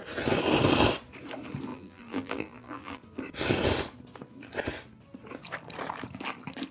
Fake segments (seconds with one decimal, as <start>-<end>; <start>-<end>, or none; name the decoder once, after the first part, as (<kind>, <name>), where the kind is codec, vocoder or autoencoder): 1.7-3.0 (vocoder, BigVGAN v2)